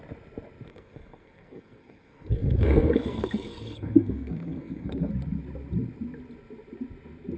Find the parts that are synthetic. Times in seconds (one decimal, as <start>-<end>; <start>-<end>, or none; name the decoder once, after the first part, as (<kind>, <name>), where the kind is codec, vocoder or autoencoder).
0.7-5.1 (codec, SNAC)